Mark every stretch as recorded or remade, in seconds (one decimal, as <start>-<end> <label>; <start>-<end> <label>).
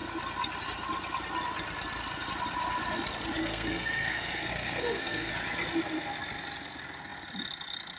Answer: 0.0-3.4 recorded; 3.4-5.3 remade; 5.3-8.0 recorded